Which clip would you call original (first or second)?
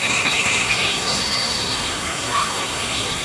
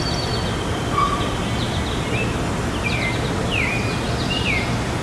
second